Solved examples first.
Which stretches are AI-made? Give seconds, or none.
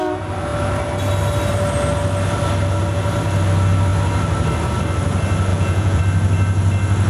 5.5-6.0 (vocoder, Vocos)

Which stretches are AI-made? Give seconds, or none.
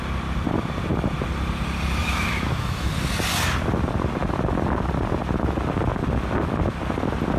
2.0-2.9 (autoencoder, DAC-VAE)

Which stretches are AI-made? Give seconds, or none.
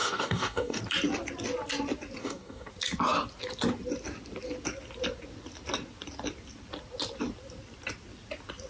0.0-0.8 (codec, DAC); 2.2-2.7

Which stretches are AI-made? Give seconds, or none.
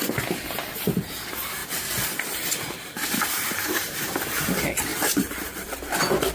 1.6-4.2 (vocoder, BigVGAN v2); 4.9-5.7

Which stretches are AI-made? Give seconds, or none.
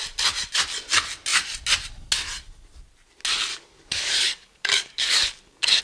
3.5-5.8 (codec, DAC)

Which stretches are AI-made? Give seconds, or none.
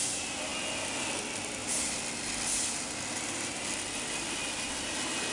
none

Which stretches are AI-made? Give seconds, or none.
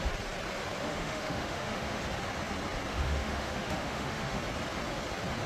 0.8-2.0 (autoencoder, DAC-VAE); 2.9-4.4